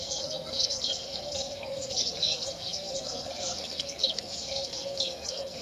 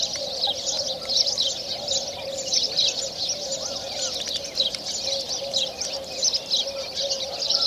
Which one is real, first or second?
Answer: second